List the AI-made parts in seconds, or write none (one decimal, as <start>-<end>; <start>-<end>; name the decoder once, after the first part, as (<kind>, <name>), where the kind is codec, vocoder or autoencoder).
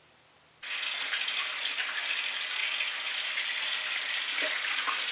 0.0-2.6 (vocoder, BigVGAN v2); 3.2-5.1